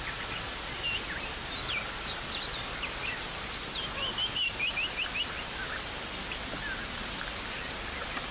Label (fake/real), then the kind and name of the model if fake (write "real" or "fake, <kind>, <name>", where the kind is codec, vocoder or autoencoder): real